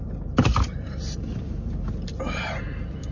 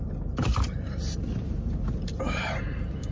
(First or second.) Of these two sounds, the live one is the first